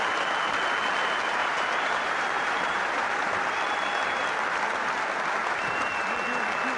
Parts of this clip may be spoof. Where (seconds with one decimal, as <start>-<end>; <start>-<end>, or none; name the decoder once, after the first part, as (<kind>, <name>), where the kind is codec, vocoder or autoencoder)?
1.4-3.4 (vocoder, BigVGAN v2); 5.4-5.9